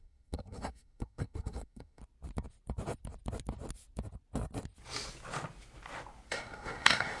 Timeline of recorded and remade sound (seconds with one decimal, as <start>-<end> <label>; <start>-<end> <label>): 0.0-2.0 remade; 2.0-6.3 recorded; 6.3-7.2 remade